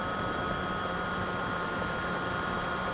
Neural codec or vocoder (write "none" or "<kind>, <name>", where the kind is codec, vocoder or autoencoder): vocoder, BigVGAN v2